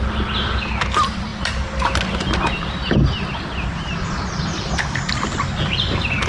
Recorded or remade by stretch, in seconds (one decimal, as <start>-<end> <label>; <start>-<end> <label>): 0.0-6.3 recorded